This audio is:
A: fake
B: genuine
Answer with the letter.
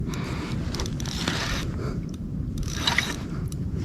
A